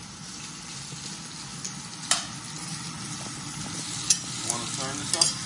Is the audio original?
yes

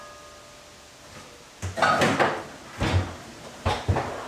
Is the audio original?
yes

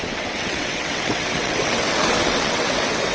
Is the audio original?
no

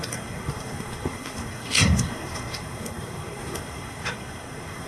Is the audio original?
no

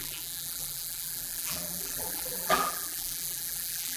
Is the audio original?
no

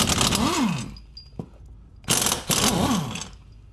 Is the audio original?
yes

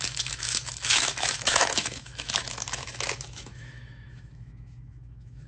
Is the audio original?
no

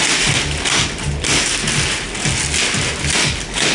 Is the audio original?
yes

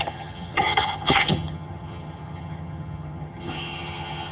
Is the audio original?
no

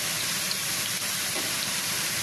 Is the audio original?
no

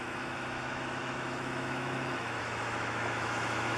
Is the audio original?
no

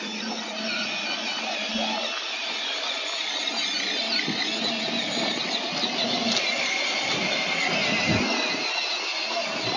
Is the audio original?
yes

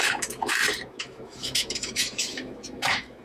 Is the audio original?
no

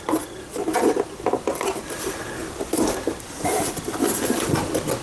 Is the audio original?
yes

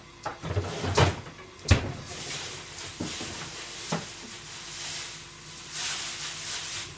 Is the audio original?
yes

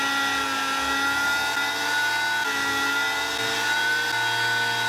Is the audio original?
yes